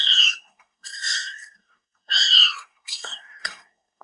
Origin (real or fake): fake